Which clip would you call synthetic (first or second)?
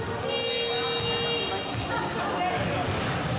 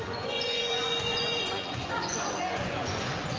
second